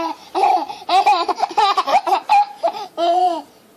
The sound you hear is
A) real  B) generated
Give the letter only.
B